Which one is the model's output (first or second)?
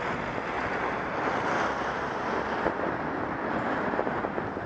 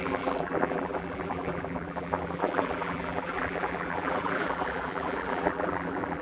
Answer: second